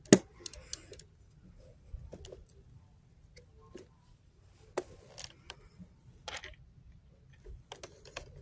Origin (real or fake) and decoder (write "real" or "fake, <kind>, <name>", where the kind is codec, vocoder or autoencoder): real